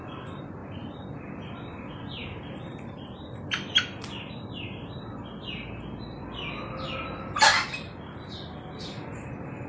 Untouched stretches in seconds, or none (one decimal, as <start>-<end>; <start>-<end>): 0.0-9.7

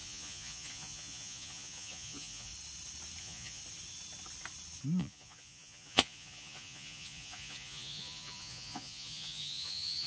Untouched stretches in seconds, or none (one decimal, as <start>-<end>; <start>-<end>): 2.5-3.2; 3.6-5.0

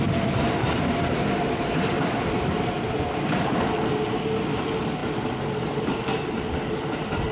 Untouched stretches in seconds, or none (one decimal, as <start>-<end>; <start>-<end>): 0.0-7.3

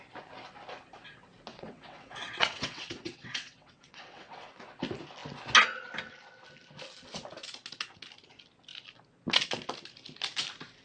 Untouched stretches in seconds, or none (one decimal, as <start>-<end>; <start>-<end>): 0.0-1.5; 4.5-10.8

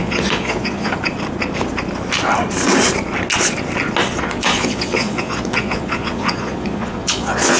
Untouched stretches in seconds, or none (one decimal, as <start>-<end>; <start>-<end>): 0.9-4.2

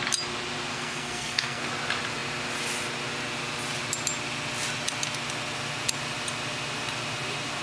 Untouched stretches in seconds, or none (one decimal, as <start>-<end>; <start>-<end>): 0.0-0.7; 1.7-7.6

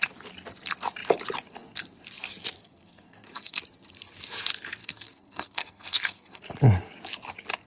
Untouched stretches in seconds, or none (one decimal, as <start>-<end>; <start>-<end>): 0.0-2.6; 3.6-4.8; 6.4-7.7

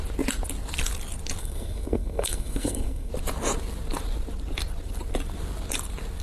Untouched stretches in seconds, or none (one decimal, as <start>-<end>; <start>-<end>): 0.0-1.4; 3.1-6.2